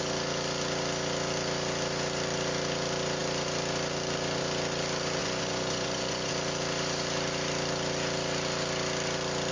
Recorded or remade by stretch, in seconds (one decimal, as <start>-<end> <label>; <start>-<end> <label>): 0.0-5.2 recorded; 5.2-6.3 remade; 6.3-9.5 recorded

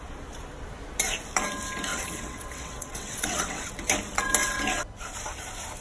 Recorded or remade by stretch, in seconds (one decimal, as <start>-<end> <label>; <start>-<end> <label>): 0.0-1.9 recorded; 1.9-3.7 remade; 3.7-5.8 recorded

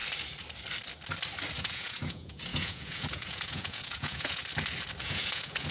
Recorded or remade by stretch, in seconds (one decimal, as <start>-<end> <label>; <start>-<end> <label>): 0.0-1.6 recorded; 1.6-4.4 remade; 4.4-5.0 recorded; 5.0-5.7 remade

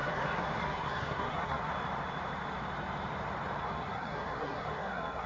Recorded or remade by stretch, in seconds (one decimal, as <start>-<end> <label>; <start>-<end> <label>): 0.0-1.7 remade; 1.7-3.6 recorded; 3.6-5.3 remade